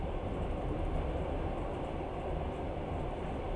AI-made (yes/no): no